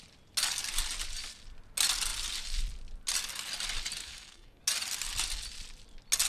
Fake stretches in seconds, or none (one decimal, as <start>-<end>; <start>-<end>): 4.0-4.6